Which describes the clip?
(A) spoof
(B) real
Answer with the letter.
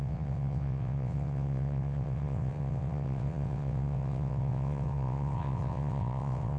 A